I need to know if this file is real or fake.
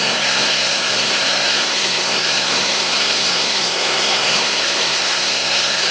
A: fake